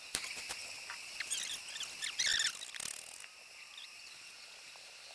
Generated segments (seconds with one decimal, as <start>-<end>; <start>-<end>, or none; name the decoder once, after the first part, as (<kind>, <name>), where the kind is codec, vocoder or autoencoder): none